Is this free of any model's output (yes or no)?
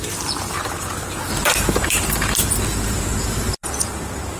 no